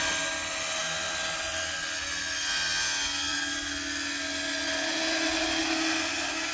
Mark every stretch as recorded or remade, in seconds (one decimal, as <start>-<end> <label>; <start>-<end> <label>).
0.0-6.5 recorded